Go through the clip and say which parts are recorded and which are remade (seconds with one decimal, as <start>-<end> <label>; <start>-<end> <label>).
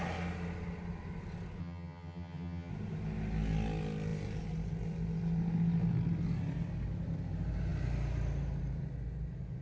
0.0-1.6 recorded; 1.6-2.7 remade; 2.7-9.6 recorded